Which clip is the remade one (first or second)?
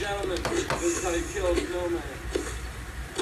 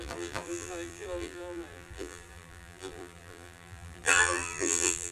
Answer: second